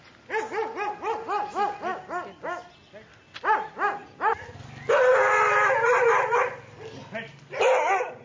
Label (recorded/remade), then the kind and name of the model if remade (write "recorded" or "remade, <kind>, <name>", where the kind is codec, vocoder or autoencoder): recorded